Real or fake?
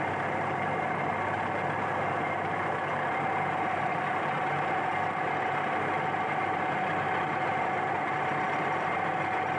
real